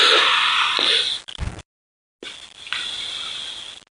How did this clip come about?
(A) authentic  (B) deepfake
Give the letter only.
A